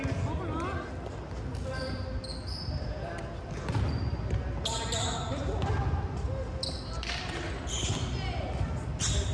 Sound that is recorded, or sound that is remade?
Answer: recorded